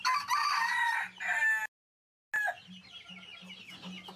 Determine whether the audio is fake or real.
real